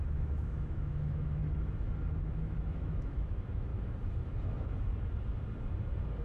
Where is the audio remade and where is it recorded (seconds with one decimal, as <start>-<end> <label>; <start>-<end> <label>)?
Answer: 0.0-1.4 remade; 1.4-2.2 recorded; 2.2-3.7 remade; 3.7-6.2 recorded